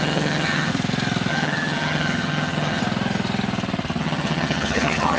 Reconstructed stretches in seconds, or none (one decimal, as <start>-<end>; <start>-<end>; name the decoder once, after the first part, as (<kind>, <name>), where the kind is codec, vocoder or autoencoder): 0.0-0.7 (vocoder, HiFi-GAN); 1.3-2.8; 4.0-5.2